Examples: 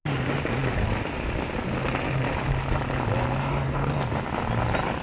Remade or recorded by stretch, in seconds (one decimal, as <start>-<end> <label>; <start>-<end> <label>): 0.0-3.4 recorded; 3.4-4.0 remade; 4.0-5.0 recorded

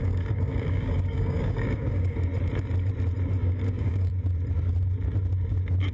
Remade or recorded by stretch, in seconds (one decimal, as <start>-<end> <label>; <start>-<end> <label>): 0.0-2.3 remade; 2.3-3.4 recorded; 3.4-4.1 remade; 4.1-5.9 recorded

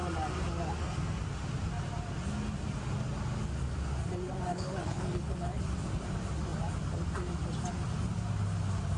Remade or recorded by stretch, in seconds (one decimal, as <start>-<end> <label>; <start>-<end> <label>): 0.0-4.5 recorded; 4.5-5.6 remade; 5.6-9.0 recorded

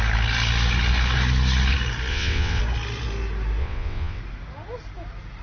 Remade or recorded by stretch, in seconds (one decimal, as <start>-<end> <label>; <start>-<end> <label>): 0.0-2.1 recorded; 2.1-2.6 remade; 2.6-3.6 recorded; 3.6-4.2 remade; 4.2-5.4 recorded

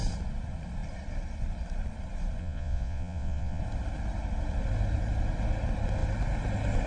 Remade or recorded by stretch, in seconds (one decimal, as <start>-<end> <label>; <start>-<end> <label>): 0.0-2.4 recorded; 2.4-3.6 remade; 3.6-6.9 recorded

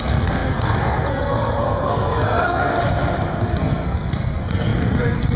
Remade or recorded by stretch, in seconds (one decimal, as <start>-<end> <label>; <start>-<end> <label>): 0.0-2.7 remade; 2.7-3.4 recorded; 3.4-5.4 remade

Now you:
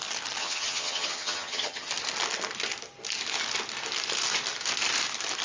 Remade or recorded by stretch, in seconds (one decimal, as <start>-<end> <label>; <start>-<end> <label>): 0.0-0.4 recorded; 0.4-1.9 remade; 1.9-5.4 recorded